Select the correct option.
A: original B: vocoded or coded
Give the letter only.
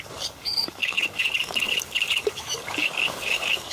B